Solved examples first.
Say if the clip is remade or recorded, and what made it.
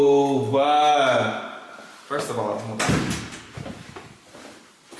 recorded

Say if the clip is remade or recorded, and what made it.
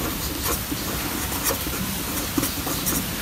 recorded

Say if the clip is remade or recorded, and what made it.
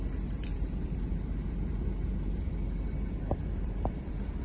remade, vocoder, BigVGAN v2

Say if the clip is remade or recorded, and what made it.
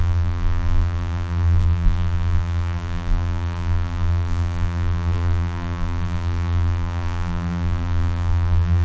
remade, vocoder, BigVGAN v2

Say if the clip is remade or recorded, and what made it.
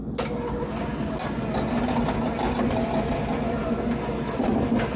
recorded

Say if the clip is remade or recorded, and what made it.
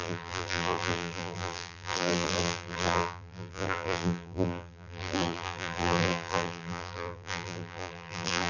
remade, vocoder, BigVGAN v2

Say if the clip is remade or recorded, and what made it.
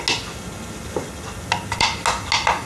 recorded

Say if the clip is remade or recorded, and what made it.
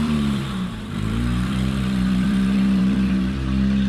remade, vocoder, BigVGAN v2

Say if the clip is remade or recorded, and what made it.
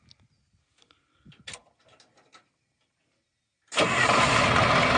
recorded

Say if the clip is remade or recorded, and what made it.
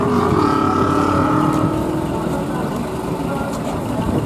recorded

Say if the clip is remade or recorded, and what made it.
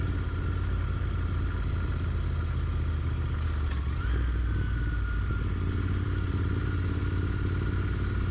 recorded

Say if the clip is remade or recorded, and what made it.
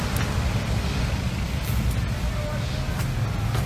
recorded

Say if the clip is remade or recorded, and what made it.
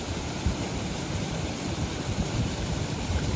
recorded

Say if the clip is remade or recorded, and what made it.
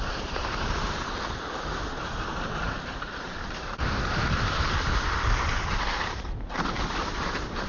remade, vocoder, BigVGAN v2